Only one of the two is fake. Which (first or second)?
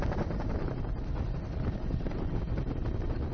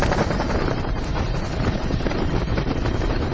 second